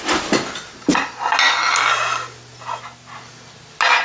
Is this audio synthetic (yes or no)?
no